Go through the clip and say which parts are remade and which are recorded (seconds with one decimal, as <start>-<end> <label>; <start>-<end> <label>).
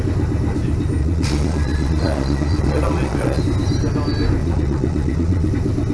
0.0-1.0 recorded; 1.0-3.4 remade; 3.4-4.4 recorded; 4.4-5.5 remade; 5.5-5.9 recorded